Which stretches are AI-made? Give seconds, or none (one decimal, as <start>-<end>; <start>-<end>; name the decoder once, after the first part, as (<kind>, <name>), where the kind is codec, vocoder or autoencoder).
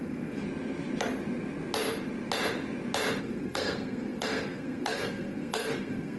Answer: 0.0-0.4 (codec, SNAC); 3.2-6.2